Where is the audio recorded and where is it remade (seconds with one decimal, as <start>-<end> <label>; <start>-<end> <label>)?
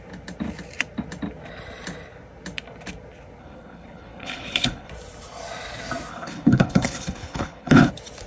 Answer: 0.0-3.4 recorded; 3.4-4.9 remade; 4.9-6.1 recorded; 6.1-7.9 remade; 7.9-8.3 recorded